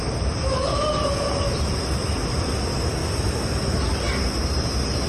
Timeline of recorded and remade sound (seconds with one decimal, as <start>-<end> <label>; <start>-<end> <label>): 0.0-5.1 recorded